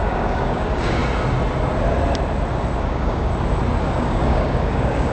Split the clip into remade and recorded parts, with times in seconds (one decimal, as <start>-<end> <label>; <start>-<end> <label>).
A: 0.0-1.0 remade; 1.0-2.8 recorded; 2.8-3.3 remade; 3.3-3.8 recorded; 3.8-5.1 remade